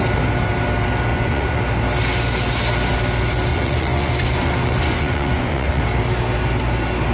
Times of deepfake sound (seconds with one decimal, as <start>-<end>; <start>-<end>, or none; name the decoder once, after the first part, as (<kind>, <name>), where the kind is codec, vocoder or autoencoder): 1.1-1.6 (vocoder, Vocos); 3.5-5.8